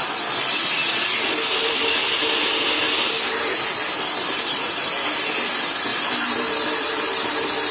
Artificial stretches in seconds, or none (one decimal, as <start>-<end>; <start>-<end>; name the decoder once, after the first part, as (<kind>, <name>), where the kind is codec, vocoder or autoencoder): 0.8-1.9 (vocoder, BigVGAN v2); 5.9-6.9